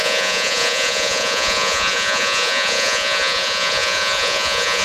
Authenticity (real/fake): fake